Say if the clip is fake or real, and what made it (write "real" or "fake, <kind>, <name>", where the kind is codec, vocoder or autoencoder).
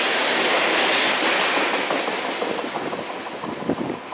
real